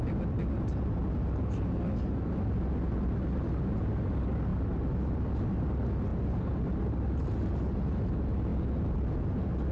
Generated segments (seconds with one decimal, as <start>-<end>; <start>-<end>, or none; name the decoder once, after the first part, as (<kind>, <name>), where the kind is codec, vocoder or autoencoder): none